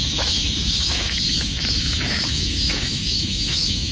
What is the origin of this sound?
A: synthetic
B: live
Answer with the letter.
A